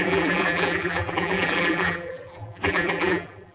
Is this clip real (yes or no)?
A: no